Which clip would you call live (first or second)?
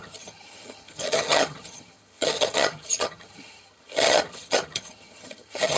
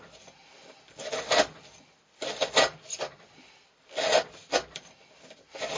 second